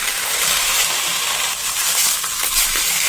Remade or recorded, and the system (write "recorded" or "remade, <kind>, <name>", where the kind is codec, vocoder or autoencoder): remade, vocoder, BigVGAN v2